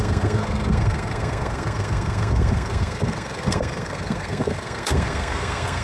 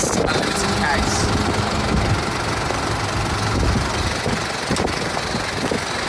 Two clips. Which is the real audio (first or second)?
second